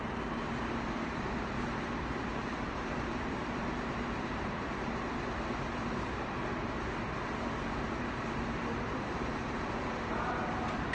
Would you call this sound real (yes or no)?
no